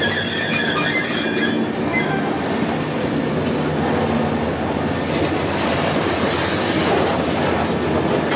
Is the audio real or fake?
real